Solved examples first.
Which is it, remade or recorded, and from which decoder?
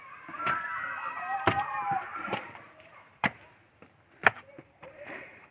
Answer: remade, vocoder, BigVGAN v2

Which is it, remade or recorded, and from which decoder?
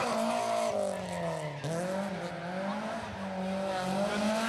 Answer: recorded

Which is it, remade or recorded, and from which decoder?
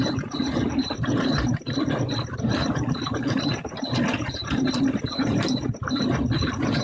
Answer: remade, vocoder, BigVGAN v2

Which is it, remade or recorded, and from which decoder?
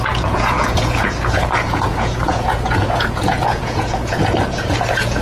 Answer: remade, vocoder, Vocos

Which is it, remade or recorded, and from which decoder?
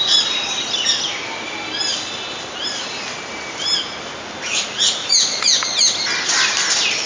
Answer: recorded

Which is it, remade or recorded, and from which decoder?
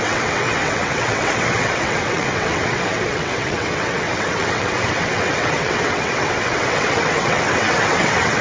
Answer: remade, vocoder, WaveNeXt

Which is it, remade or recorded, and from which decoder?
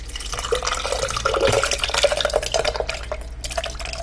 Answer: recorded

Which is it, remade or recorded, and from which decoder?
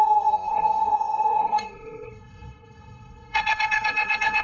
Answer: remade, codec, SNAC